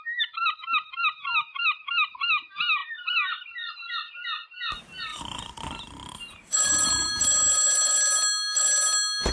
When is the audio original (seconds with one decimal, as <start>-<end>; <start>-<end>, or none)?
0.0-2.8; 3.7-5.1; 7.1-9.3